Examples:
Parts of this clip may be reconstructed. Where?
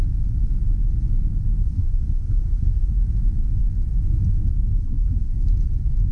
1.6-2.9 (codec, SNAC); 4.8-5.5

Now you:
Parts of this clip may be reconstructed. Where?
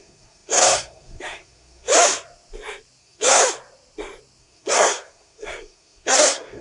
0.0-1.9 (codec, SNAC); 3.0-3.4; 4.4-6.6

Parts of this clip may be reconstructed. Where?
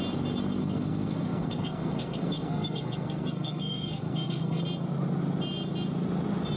0.6-4.6 (codec, SNAC)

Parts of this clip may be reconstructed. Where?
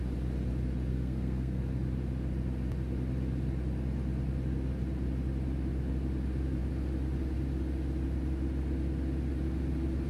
0.9-1.6 (codec, SNAC)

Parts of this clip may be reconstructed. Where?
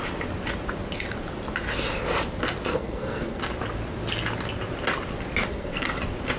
2.7-3.4 (codec, SNAC); 5.5-6.0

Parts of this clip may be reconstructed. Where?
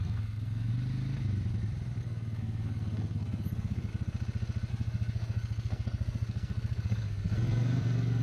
0.0-0.7 (codec, SNAC); 2.0-3.9; 4.7-8.2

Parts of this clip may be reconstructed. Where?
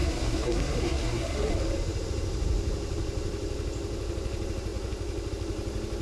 0.0-1.5 (codec, SNAC)